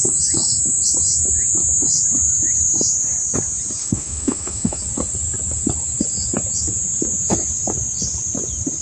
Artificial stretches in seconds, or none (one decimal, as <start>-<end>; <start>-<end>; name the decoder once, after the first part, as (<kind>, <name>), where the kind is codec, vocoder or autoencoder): 3.8-4.8 (autoencoder, DAC-VAE)

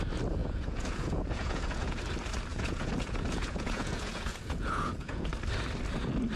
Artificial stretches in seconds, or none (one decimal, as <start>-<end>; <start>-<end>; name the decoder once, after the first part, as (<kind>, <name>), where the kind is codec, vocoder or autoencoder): 0.4-2.0 (vocoder, Vocos); 2.5-5.3

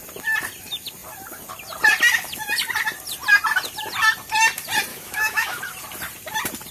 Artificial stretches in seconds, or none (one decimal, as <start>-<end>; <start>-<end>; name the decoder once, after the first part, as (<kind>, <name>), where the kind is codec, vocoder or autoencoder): 4.9-5.6 (autoencoder, DAC-VAE)

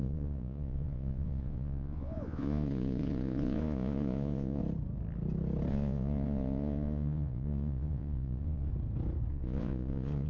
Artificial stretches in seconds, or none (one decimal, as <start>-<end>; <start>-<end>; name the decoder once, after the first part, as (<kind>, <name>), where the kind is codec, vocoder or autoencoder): 0.0-4.6 (vocoder, Vocos); 5.7-8.7; 9.3-10.3